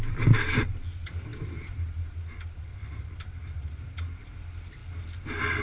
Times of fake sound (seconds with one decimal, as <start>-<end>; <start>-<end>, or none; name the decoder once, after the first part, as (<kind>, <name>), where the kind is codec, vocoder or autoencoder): none